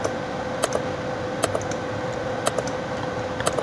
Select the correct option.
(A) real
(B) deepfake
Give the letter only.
A